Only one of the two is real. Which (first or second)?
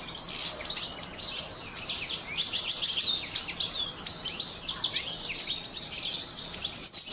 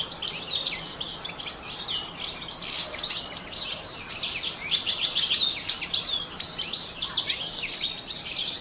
first